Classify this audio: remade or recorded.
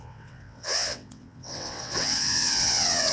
remade